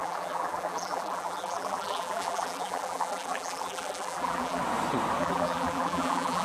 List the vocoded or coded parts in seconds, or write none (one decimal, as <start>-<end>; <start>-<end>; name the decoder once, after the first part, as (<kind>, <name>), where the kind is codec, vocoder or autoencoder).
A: 0.0-4.6 (vocoder, BigVGAN v2); 5.2-6.4